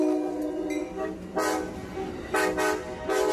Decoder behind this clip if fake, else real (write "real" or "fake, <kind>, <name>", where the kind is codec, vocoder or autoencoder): real